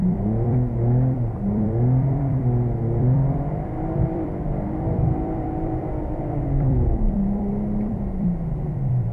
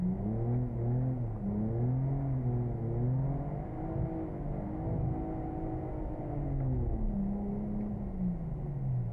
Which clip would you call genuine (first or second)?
second